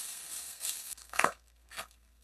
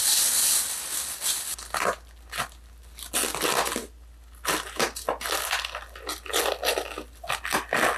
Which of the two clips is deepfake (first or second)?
first